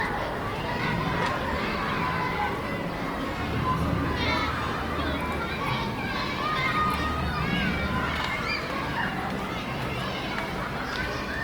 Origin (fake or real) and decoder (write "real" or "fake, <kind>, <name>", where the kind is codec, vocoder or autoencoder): real